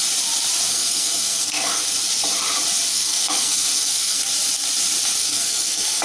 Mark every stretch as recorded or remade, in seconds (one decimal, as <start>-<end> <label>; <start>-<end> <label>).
0.0-0.7 recorded; 0.7-1.8 remade; 1.8-2.9 recorded; 2.9-4.2 remade; 4.2-5.2 recorded; 5.2-6.0 remade